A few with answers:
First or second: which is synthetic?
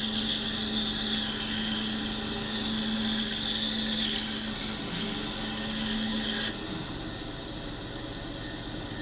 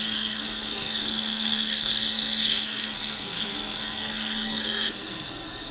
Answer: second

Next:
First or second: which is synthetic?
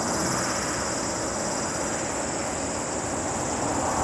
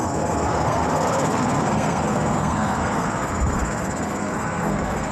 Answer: second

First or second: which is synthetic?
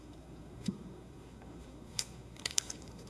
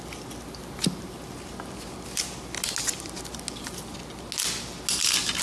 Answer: first